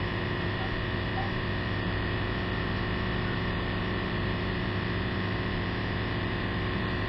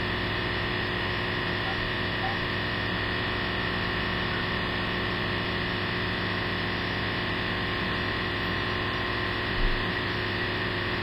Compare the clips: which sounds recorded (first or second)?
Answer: second